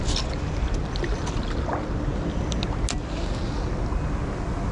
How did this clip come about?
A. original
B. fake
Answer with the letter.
A